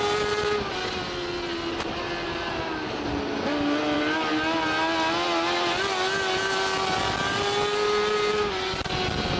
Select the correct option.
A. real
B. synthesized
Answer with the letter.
A